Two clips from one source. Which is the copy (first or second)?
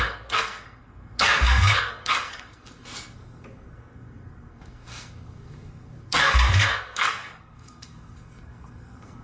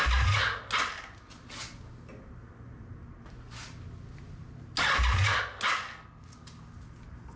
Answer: first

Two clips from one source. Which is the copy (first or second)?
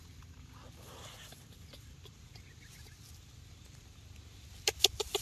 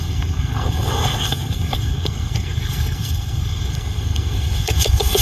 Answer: second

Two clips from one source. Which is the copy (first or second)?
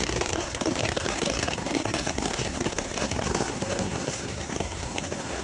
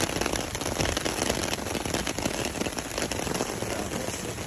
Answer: first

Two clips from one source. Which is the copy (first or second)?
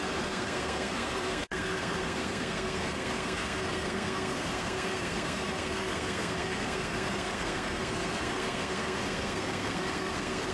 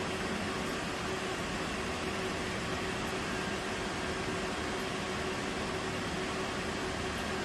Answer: first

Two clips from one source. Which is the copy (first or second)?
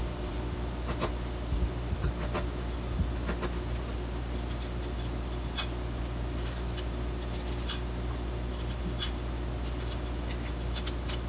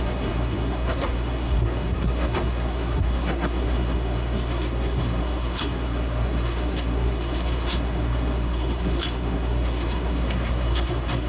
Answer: second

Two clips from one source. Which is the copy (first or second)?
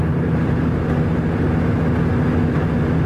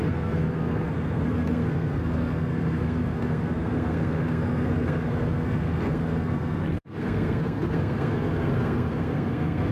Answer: second